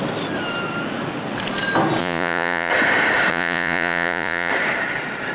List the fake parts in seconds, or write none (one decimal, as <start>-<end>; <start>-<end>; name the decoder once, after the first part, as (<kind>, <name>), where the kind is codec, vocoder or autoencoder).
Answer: 2.0-2.7 (vocoder, Vocos); 3.3-4.5